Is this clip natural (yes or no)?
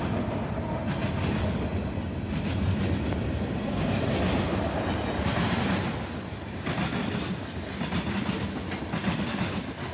yes